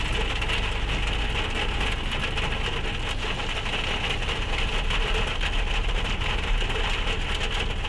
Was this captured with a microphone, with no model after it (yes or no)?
yes